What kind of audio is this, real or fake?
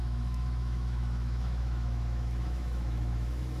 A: fake